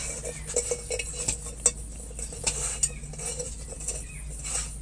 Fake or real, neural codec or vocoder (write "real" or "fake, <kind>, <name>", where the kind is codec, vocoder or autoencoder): real